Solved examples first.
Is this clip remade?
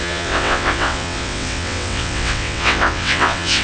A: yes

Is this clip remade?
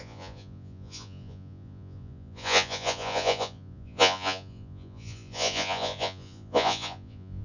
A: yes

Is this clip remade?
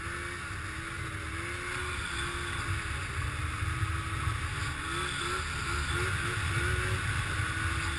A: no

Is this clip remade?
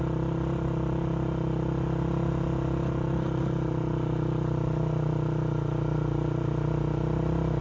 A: no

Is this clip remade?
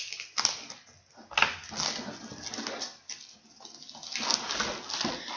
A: no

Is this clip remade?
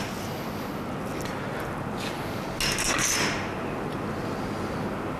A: no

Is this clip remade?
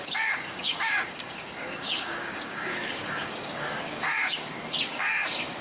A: yes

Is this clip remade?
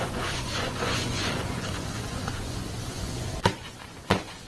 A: yes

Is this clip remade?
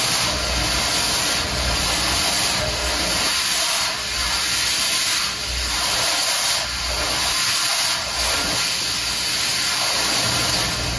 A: no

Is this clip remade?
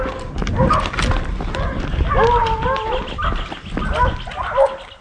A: no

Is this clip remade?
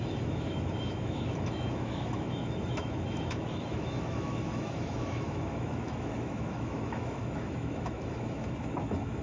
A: yes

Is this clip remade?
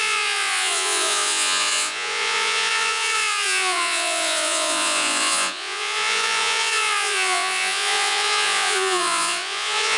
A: yes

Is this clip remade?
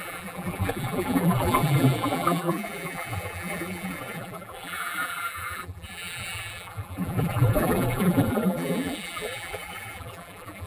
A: yes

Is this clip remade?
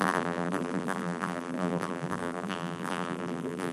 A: yes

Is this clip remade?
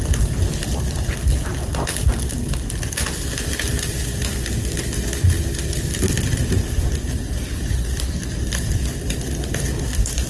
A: no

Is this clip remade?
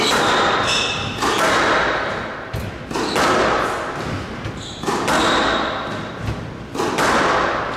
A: no